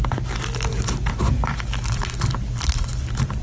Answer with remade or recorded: recorded